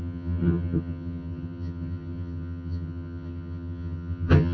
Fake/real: fake